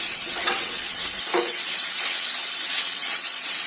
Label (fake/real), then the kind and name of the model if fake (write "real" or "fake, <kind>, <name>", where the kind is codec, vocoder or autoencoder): fake, vocoder, WaveNeXt